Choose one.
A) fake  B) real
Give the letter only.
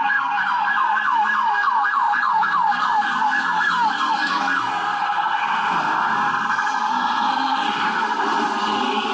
A